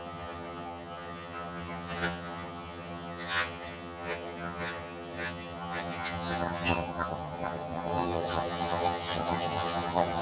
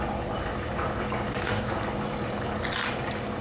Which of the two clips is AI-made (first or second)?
first